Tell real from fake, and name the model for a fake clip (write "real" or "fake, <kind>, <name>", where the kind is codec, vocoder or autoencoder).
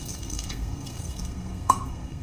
fake, codec, SNAC